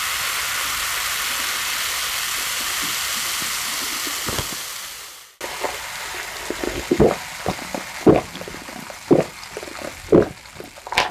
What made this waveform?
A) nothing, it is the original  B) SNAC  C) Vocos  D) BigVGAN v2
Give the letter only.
A